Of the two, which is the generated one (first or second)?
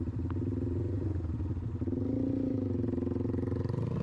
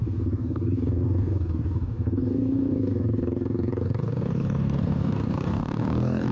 second